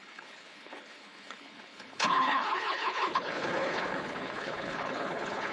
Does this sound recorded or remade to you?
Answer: remade